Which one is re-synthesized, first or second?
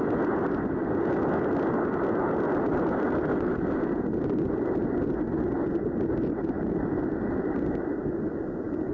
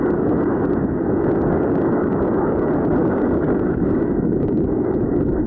second